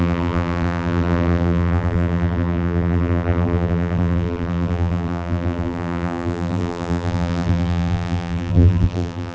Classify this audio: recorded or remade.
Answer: remade